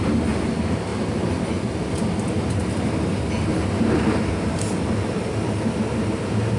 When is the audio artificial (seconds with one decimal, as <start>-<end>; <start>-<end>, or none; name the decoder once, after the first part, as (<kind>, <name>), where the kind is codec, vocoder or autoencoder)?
none